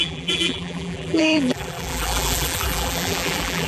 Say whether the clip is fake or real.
fake